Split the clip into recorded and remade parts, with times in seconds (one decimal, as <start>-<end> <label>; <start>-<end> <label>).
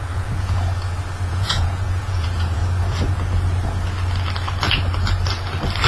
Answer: 0.0-0.7 remade; 0.7-1.3 recorded; 1.3-2.6 remade; 2.6-5.9 recorded